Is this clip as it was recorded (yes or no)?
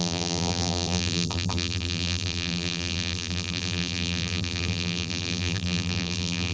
no